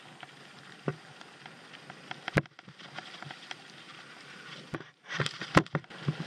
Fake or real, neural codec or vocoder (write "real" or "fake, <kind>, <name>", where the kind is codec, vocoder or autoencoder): real